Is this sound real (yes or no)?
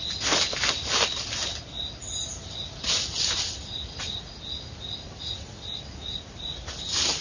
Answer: yes